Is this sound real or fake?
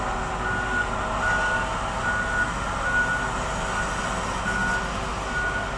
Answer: real